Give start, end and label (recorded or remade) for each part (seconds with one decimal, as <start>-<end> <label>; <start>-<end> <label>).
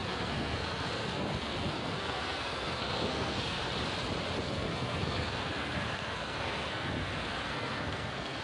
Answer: 0.0-3.6 remade; 3.6-4.4 recorded; 4.4-8.4 remade